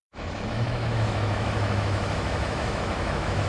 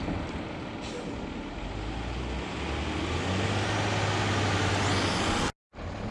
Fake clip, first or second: first